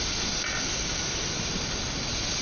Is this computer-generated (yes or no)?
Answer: no